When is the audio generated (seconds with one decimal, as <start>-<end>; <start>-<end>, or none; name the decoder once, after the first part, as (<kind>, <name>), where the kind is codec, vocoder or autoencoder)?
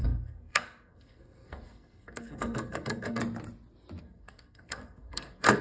0.0-3.2 (codec, SNAC); 4.0-5.6